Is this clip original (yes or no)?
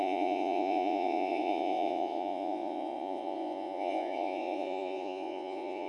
no